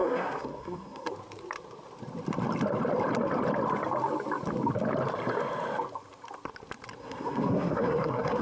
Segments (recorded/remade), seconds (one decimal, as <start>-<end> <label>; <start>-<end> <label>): 0.0-1.1 remade; 1.1-7.0 recorded; 7.0-8.4 remade